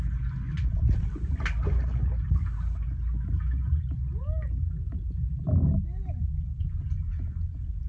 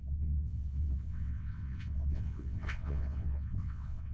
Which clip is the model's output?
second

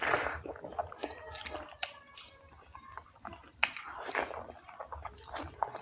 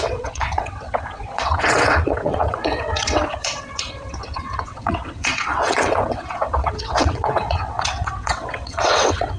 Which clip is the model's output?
second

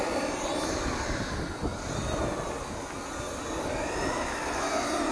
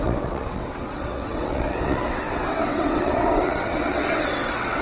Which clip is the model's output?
second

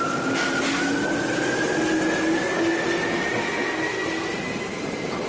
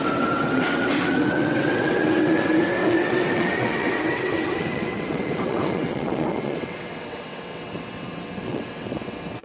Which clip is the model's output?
second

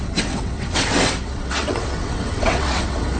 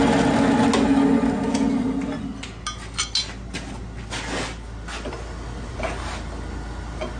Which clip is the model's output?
first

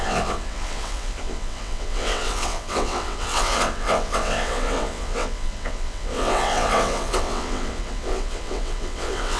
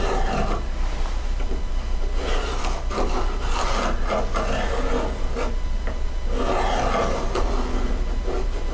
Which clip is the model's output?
first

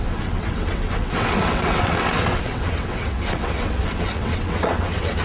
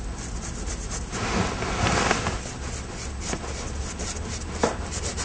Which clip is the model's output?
first